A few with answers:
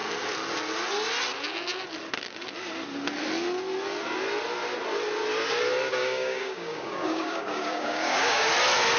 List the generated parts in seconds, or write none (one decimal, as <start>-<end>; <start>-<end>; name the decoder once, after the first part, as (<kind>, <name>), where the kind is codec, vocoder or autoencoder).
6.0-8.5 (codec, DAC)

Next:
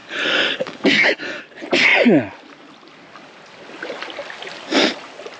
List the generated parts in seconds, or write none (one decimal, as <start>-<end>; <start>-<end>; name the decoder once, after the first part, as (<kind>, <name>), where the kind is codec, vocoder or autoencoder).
0.0-1.4 (codec, DAC)

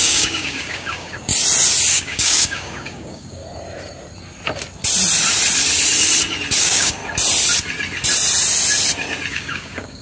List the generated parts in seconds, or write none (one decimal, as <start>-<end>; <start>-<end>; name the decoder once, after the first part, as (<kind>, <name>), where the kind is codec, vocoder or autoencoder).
0.0-1.3 (codec, DAC); 1.9-3.4; 6.6-7.0; 9.3-10.0

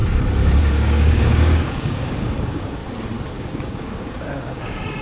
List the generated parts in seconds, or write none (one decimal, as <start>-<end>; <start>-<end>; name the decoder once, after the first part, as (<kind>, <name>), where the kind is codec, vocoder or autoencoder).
0.6-2.8 (codec, DAC); 3.3-5.0

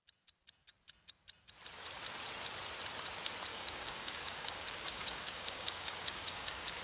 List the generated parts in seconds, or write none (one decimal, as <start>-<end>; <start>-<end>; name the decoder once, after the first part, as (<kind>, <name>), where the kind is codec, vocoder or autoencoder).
3.5-6.8 (codec, DAC)

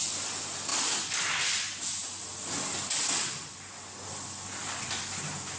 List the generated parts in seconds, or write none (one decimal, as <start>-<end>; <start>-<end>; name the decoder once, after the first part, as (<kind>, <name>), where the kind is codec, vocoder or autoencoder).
none